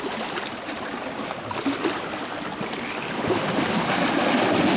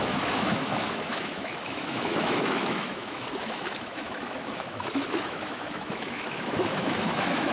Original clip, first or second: first